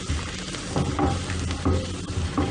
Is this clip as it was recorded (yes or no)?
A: yes